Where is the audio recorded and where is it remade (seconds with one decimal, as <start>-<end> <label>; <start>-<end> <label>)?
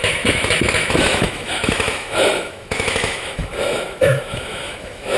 0.0-5.2 remade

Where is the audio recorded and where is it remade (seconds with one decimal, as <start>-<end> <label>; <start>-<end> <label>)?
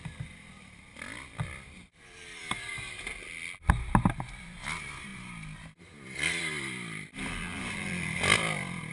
0.0-2.4 remade; 2.4-3.9 recorded; 3.9-5.1 remade; 5.1-5.8 recorded; 5.8-8.9 remade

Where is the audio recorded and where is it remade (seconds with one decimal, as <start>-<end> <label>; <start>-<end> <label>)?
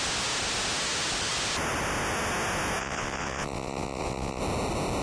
0.0-2.8 recorded; 2.8-4.4 remade; 4.4-5.0 recorded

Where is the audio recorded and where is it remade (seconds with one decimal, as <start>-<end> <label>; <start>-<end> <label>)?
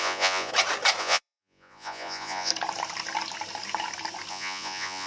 0.0-0.5 remade; 0.5-1.0 recorded; 1.0-2.5 remade; 2.5-4.3 recorded; 4.3-5.1 remade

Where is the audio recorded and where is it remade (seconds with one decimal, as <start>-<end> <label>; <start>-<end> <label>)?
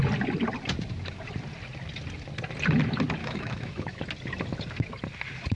0.0-3.2 recorded; 3.2-4.0 remade; 4.0-5.6 recorded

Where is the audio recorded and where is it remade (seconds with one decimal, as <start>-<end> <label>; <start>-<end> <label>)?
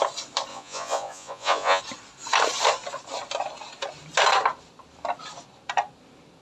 0.0-0.5 recorded; 0.5-1.8 remade; 1.8-6.4 recorded